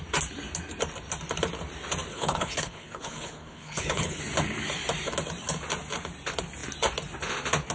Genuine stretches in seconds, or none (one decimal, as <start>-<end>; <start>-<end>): 0.0-2.1; 4.2-7.7